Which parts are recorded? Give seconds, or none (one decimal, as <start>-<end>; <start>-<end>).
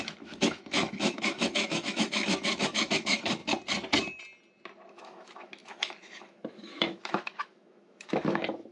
3.4-4.9